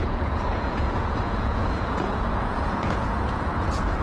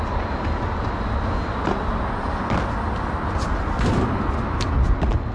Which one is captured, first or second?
second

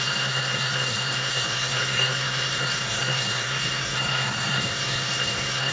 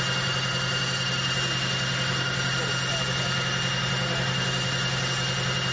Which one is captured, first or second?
second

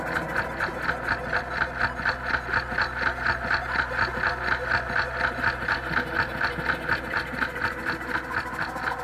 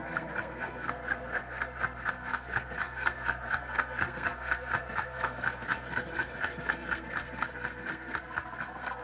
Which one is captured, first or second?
first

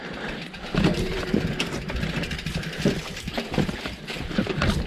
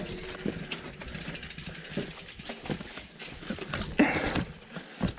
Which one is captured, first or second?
second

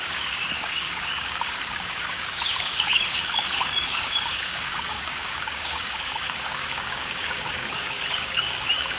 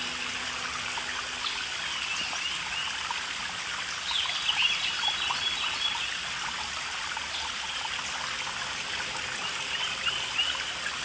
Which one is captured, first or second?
second